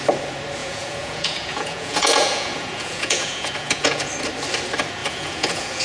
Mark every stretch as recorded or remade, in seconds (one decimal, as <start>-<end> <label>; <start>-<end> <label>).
0.0-0.6 recorded; 0.6-4.1 remade; 4.1-5.0 recorded; 5.0-5.8 remade